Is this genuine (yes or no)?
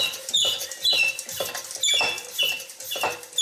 yes